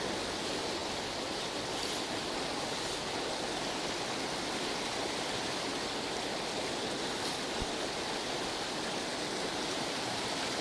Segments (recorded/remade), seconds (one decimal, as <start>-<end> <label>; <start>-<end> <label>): 0.0-10.6 recorded